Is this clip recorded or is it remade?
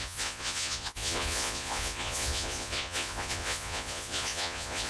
remade